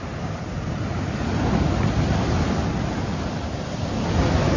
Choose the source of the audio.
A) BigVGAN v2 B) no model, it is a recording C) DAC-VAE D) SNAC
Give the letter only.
B